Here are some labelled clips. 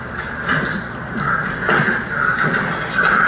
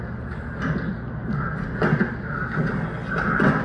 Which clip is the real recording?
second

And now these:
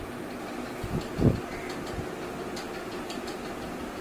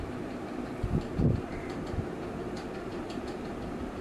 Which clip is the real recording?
first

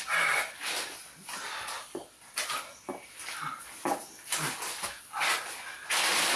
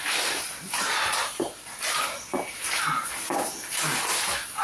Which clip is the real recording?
first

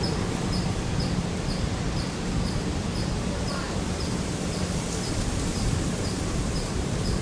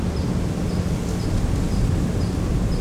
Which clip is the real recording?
second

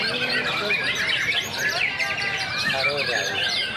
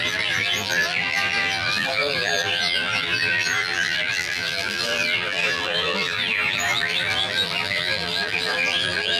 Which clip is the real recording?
first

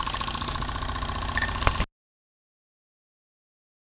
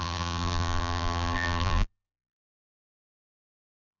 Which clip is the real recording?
first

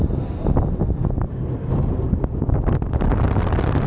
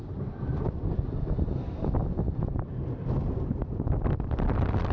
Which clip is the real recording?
first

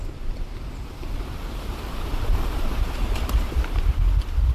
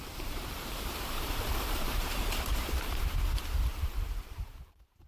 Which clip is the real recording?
first